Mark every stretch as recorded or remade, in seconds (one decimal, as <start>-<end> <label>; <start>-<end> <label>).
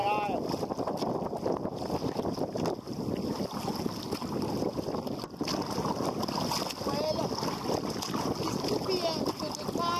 0.0-10.0 recorded